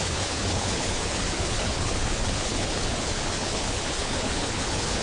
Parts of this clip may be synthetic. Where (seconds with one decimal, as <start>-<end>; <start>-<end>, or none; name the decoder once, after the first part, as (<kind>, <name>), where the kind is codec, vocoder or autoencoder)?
0.0-5.0 (codec, HILCodec)